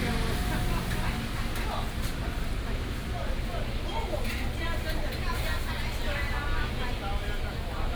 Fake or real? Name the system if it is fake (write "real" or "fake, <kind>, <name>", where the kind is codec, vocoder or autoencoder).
real